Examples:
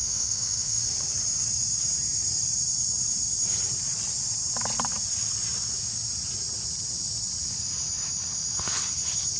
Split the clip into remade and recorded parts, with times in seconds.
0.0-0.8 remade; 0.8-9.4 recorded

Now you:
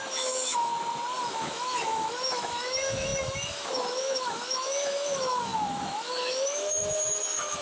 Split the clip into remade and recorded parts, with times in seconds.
0.0-0.7 remade; 0.7-1.2 recorded; 1.2-7.6 remade

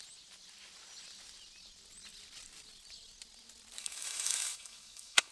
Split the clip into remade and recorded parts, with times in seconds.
0.0-3.8 recorded; 3.8-5.3 remade

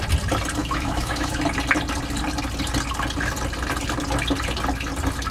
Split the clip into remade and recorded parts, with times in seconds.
0.0-0.6 recorded; 0.6-1.4 remade; 1.4-5.3 recorded

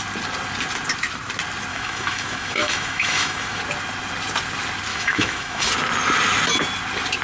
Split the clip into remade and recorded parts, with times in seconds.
0.0-1.7 recorded; 1.7-3.6 remade; 3.6-4.9 recorded; 4.9-5.7 remade; 5.7-7.2 recorded